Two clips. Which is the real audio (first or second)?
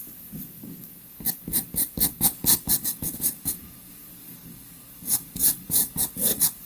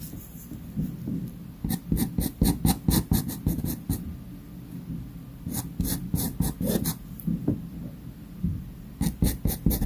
second